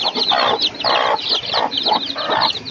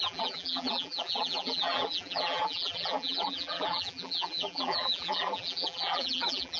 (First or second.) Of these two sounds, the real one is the first